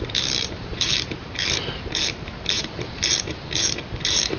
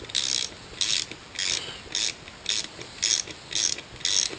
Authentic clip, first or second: second